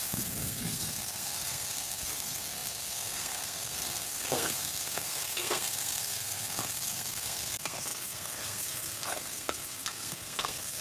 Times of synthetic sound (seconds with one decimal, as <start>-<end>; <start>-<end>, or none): 0.0-10.8